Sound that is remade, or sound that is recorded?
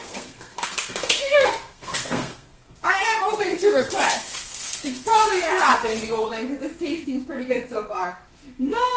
remade